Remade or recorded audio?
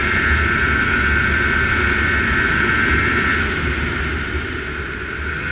recorded